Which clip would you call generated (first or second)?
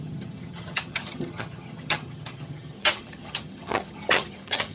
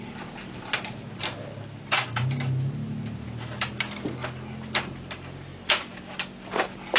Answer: first